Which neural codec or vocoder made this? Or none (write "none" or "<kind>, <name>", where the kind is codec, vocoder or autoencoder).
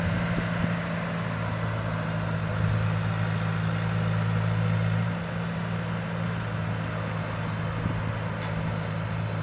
none